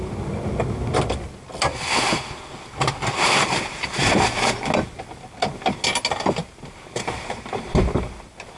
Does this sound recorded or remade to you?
recorded